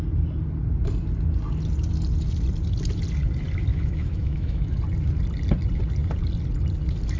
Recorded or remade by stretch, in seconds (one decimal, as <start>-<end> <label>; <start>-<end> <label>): 0.0-3.7 recorded; 3.7-4.8 remade; 4.8-7.2 recorded